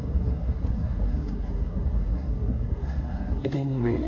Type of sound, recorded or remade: remade